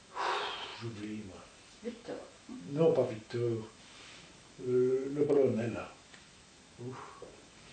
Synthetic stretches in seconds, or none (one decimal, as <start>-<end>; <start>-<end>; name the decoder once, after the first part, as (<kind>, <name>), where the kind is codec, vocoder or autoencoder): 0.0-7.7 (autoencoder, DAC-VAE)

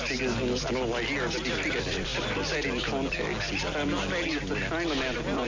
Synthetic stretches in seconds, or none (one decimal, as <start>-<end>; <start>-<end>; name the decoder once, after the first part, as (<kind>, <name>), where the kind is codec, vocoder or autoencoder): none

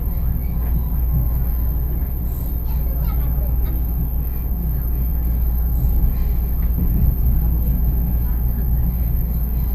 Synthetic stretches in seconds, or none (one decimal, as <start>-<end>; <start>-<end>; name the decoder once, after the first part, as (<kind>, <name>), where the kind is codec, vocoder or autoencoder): none

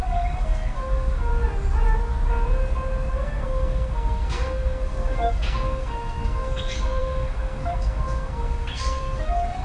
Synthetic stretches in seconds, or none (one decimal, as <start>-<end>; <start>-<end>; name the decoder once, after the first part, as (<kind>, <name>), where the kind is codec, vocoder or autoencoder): 0.0-1.3 (codec, SNAC); 3.1-9.6

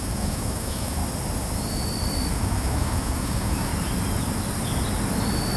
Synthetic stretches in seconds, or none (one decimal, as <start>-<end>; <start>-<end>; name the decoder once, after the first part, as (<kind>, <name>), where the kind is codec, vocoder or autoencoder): 0.0-1.0 (autoencoder, DAC-VAE); 2.3-3.7

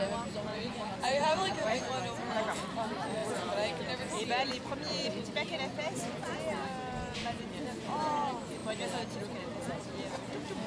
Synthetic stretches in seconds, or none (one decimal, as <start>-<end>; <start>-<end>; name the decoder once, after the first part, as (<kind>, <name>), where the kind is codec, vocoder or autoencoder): 0.5-1.9 (vocoder, Vocos)